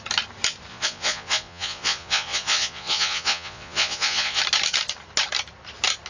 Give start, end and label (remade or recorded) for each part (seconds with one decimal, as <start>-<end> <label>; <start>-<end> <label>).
0.0-0.7 recorded; 0.7-4.4 remade; 4.4-6.1 recorded